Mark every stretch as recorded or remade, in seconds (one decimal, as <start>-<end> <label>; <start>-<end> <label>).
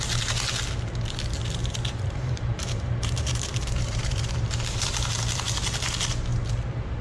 0.0-1.6 recorded; 1.6-4.8 remade; 4.8-7.0 recorded